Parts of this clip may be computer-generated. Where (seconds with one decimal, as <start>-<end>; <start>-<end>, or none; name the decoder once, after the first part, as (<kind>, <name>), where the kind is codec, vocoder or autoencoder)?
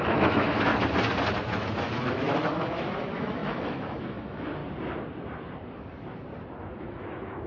0.0-0.7 (autoencoder, DAC-VAE); 1.8-4.6; 6.8-7.5